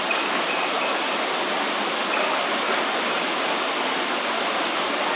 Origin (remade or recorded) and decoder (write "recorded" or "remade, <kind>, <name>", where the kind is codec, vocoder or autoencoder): recorded